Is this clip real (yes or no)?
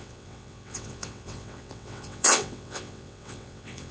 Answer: no